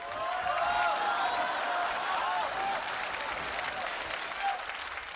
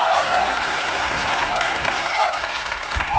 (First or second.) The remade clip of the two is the second